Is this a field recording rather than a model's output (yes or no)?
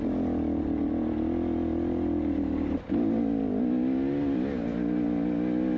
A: yes